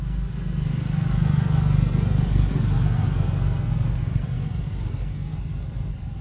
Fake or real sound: fake